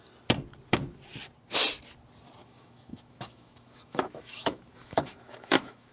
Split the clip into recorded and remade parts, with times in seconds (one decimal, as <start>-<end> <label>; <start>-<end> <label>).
0.0-2.4 recorded; 2.4-5.9 remade